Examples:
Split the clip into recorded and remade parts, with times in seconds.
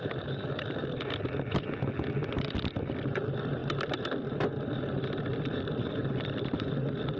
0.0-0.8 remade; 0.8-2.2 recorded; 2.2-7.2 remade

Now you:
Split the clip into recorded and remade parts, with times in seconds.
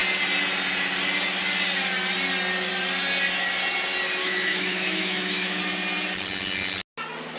0.0-4.2 recorded; 4.2-5.6 remade; 5.6-7.4 recorded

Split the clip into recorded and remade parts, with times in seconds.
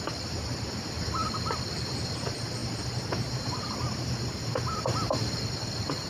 0.0-2.6 recorded; 2.6-4.2 remade; 4.2-6.1 recorded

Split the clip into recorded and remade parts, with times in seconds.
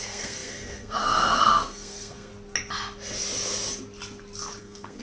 0.0-2.3 remade; 2.3-4.6 recorded; 4.6-5.0 remade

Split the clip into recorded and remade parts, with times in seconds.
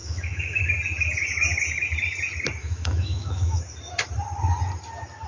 0.0-0.6 remade; 0.6-2.6 recorded; 2.6-3.6 remade; 3.6-5.3 recorded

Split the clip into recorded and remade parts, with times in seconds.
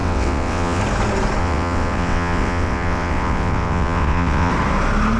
0.0-0.8 remade; 0.8-1.4 recorded; 1.4-4.5 remade; 4.5-5.2 recorded